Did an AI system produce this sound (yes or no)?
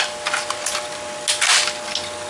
no